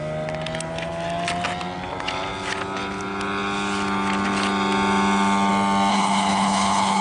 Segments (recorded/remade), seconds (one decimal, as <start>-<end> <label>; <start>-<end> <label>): 0.0-5.9 recorded; 5.9-7.0 remade